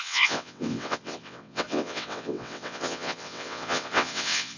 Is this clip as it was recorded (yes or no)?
no